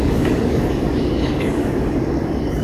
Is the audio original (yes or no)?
no